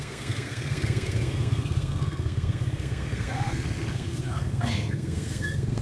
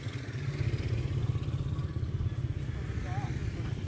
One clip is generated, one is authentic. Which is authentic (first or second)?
second